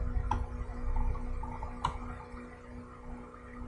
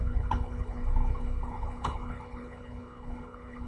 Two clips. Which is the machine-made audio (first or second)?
second